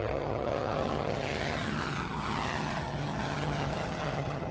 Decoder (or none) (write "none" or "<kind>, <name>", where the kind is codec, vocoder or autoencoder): vocoder, HiFi-GAN